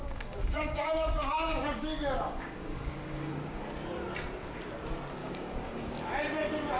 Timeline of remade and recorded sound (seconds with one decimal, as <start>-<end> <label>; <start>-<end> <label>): 0.0-3.6 remade; 3.6-5.2 recorded; 5.2-5.9 remade; 5.9-6.8 recorded